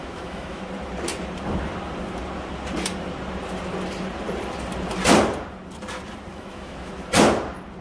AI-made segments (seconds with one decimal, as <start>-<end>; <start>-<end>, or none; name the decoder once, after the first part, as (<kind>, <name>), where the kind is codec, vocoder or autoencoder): 0.0-0.6 (autoencoder, DAC-VAE); 6.3-6.9